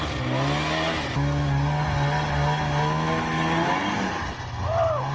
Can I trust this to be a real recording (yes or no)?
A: yes